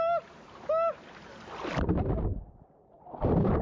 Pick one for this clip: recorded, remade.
recorded